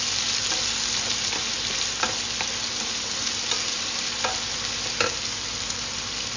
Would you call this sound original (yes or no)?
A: yes